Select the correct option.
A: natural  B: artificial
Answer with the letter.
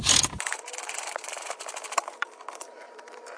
B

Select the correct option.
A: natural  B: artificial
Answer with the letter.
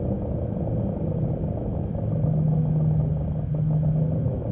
A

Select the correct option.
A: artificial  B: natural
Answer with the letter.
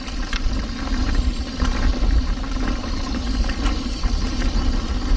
A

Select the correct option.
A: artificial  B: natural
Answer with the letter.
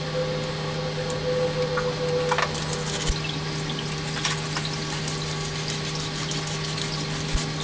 B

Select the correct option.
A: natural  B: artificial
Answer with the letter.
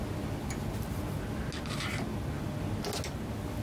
A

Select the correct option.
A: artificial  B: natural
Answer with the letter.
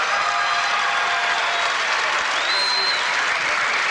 B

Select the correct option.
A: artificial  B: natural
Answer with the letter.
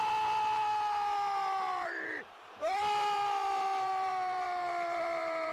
A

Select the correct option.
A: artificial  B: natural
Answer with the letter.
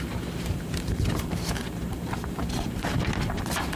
A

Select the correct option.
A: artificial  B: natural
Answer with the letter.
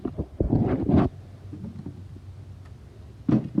B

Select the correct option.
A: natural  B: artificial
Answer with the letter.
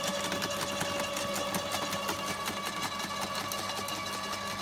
A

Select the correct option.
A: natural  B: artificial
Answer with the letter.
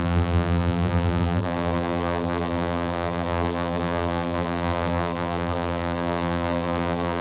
B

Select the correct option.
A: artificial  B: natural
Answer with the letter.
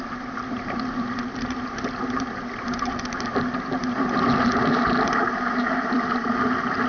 A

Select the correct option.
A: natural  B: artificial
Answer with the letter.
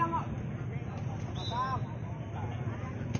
A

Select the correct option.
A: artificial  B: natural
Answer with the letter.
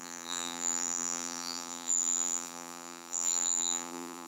A